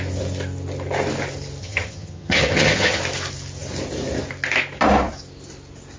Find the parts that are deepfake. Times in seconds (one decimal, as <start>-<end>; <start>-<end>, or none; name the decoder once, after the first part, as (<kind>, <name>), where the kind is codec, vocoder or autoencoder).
1.6-3.0 (vocoder, HiFi-GAN)